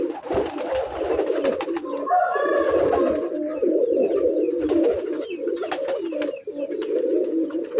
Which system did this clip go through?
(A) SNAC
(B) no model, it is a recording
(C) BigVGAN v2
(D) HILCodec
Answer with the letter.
B